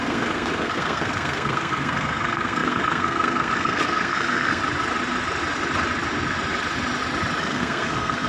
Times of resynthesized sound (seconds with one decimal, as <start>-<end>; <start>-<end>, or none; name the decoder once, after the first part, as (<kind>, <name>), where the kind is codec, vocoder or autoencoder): 0.0-4.6 (codec, SNAC); 7.4-8.3